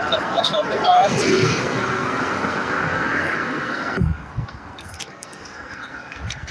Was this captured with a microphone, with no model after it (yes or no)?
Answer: no